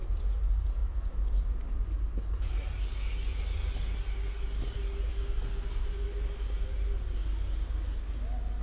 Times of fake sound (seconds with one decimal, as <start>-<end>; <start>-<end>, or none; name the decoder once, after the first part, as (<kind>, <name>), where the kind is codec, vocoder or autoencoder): none